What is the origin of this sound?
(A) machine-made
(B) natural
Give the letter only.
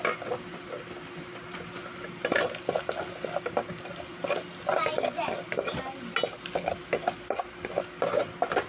B